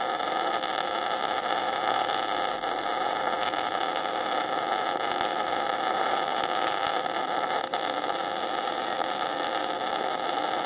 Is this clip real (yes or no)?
yes